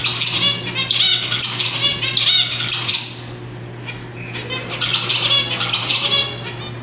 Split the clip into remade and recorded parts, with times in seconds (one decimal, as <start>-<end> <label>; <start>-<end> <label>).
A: 0.0-6.8 recorded